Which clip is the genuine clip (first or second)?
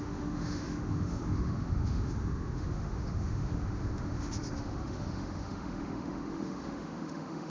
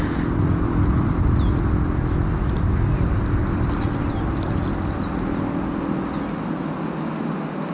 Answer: second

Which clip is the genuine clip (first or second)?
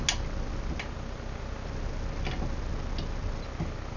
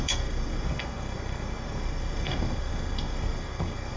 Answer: first